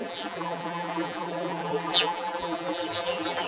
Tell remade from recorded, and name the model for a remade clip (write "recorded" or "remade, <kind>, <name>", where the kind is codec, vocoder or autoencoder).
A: remade, vocoder, BigVGAN v2